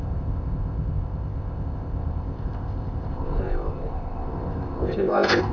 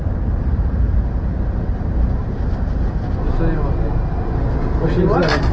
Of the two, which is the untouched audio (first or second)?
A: second